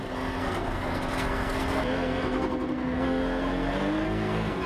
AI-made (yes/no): yes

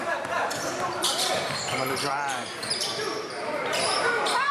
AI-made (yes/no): yes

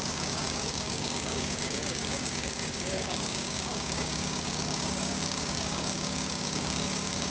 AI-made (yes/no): yes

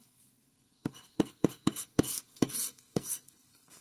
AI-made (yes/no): yes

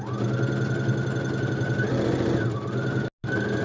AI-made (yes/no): no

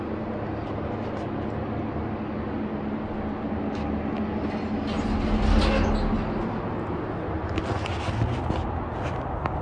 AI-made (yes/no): no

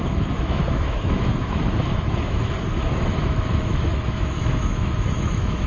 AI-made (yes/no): yes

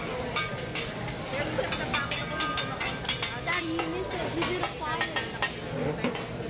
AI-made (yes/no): no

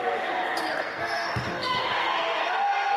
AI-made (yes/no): yes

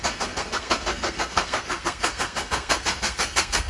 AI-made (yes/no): yes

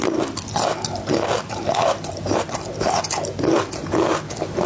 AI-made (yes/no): no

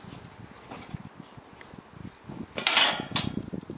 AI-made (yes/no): no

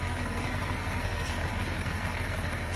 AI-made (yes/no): yes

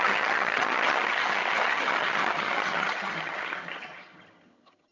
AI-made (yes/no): yes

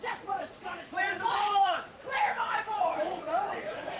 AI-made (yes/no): yes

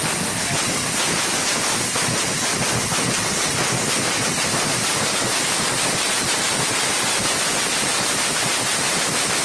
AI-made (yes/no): no